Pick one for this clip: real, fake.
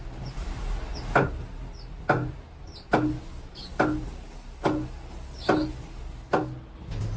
real